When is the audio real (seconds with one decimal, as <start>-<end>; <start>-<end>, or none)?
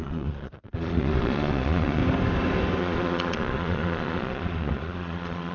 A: 2.0-2.8